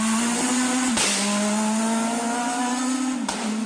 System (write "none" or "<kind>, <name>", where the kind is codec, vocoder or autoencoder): none